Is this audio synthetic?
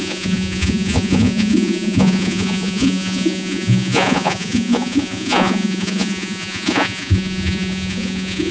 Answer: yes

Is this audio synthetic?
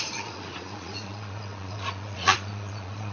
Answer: yes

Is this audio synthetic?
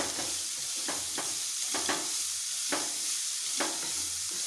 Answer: no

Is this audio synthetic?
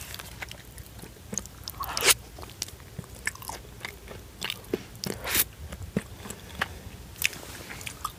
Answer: no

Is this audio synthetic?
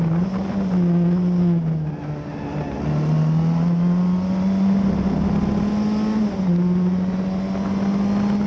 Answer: no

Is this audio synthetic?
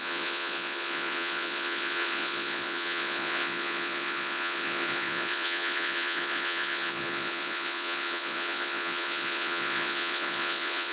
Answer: yes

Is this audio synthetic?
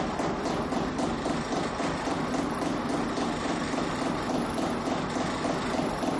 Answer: no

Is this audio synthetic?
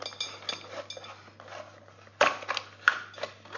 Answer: no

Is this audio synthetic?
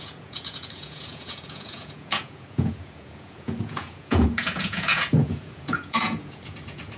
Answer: yes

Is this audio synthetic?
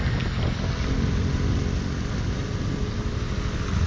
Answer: no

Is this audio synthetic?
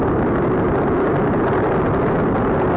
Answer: no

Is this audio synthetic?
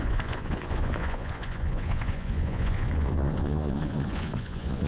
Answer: yes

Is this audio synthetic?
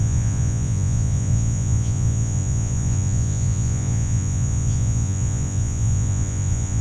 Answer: yes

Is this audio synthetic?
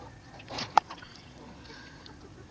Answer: yes